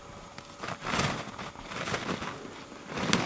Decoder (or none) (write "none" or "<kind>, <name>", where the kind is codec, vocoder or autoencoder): none